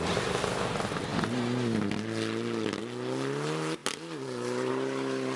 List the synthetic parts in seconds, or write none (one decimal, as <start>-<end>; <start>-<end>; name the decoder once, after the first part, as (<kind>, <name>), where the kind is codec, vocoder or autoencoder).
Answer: none